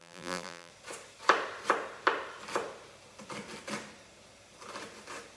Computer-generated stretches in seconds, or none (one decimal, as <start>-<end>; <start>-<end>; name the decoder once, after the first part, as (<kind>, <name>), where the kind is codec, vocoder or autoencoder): 0.0-0.7 (vocoder, BigVGAN v2)